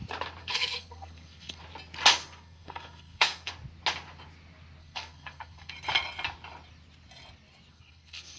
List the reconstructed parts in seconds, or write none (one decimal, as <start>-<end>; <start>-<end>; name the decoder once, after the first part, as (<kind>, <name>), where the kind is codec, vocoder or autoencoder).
0.4-1.6 (codec, SNAC); 2.2-3.5; 4.8-5.7; 7.7-8.4